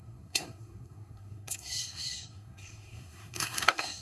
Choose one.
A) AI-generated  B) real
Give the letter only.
A